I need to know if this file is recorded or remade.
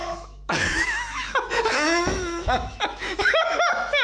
remade